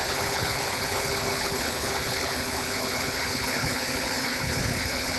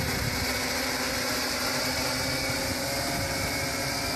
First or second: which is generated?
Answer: first